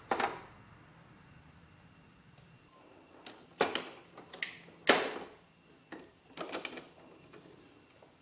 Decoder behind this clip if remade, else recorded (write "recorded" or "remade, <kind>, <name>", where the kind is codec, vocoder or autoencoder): recorded